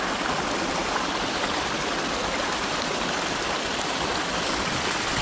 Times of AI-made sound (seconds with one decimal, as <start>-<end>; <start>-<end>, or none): 0.8-1.5